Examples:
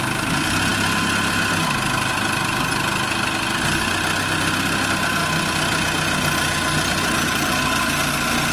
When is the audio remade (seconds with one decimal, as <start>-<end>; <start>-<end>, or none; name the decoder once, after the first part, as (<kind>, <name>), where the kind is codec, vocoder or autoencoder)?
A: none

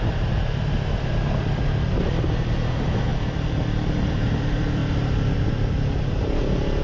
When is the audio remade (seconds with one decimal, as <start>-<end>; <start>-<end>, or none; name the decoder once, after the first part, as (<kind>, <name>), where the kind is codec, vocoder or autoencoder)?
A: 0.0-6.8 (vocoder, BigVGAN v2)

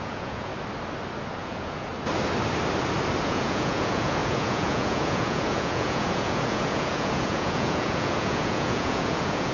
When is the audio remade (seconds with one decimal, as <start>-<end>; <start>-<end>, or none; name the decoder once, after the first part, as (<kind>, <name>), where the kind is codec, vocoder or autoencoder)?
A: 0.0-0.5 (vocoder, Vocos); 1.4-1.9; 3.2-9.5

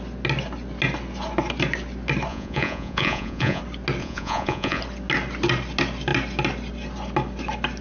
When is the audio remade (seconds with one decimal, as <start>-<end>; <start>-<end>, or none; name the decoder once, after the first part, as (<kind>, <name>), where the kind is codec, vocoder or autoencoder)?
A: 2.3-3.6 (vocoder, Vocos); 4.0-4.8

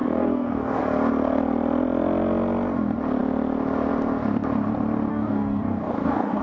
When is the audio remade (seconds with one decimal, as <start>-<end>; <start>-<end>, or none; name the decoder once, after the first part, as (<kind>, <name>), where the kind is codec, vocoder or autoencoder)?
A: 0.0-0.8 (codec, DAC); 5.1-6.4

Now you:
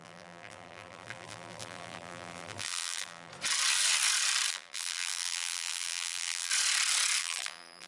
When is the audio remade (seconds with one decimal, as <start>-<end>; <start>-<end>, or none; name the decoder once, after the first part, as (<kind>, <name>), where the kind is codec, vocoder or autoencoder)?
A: 0.0-3.3 (vocoder, BigVGAN v2); 4.5-6.5; 7.2-7.9